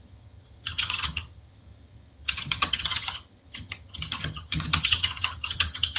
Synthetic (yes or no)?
yes